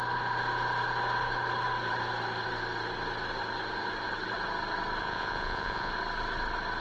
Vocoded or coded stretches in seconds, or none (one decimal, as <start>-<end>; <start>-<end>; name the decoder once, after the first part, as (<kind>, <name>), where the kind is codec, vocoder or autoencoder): 5.0-5.9 (vocoder, Vocos)